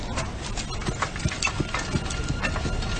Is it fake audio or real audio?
real